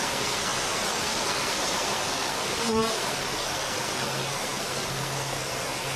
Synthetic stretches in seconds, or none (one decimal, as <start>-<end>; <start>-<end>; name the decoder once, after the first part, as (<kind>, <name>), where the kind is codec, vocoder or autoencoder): 0.0-6.0 (codec, SNAC)